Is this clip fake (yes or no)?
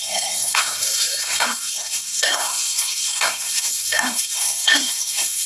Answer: yes